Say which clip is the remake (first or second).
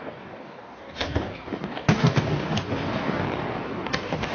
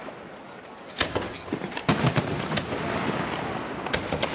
first